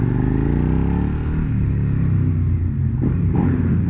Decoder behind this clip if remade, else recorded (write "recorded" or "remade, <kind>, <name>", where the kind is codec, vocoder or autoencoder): recorded